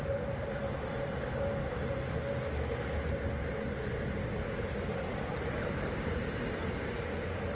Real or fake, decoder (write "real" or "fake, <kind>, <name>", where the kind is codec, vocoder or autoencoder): real